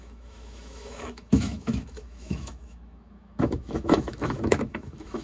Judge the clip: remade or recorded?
remade